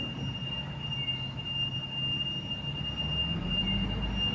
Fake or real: real